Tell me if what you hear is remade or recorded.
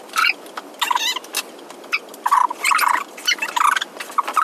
recorded